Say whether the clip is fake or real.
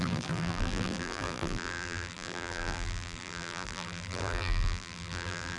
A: fake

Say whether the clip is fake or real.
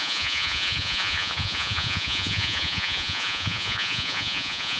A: fake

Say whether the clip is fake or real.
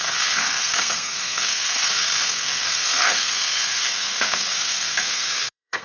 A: fake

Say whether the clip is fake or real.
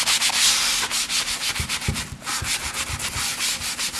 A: real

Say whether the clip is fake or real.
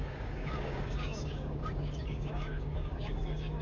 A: fake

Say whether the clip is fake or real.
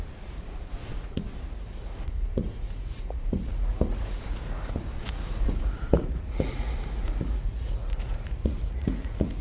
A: fake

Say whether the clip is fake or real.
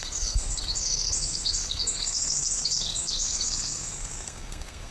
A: fake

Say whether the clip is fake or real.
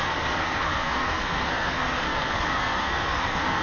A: fake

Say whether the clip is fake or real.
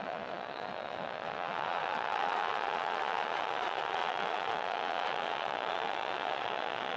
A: fake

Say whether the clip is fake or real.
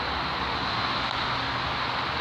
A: real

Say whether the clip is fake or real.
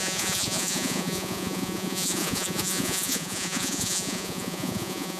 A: fake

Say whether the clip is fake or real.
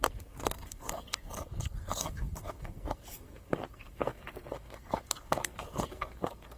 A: fake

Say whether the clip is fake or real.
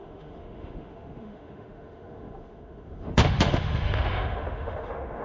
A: fake